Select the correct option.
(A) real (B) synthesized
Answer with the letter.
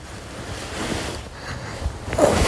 A